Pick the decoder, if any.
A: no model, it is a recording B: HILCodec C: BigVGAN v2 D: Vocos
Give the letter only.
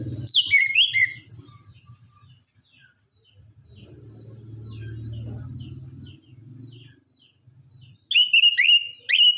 A